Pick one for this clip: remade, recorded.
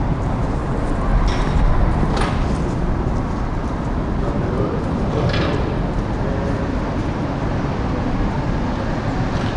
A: recorded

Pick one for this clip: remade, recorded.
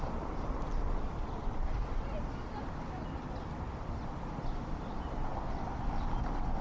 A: recorded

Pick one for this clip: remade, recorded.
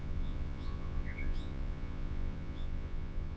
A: remade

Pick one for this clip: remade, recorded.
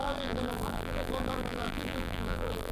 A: remade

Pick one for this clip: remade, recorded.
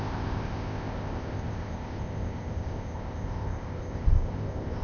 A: remade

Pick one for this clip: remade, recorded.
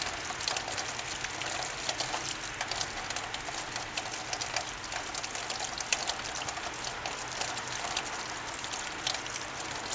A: recorded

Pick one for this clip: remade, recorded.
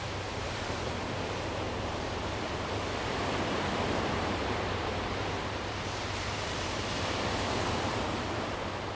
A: remade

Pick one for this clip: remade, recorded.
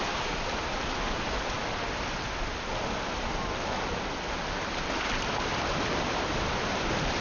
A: recorded